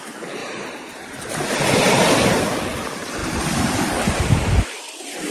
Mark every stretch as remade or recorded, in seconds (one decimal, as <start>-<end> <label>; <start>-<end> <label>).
0.0-0.4 recorded; 0.4-1.3 remade; 1.3-3.2 recorded; 3.2-4.2 remade; 4.2-5.3 recorded